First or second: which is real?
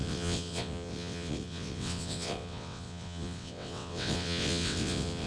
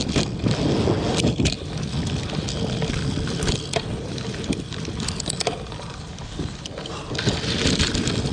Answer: second